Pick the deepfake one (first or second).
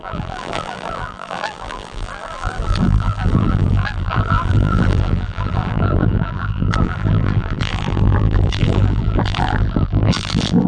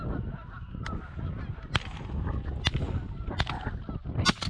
first